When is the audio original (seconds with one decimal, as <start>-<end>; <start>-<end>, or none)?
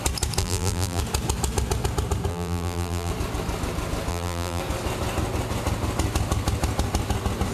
0.0-0.4; 1.0-2.3; 3.1-4.1; 4.6-7.5